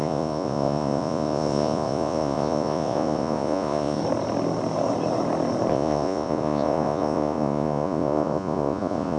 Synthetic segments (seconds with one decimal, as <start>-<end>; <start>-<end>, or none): 0.0-4.0; 5.7-9.2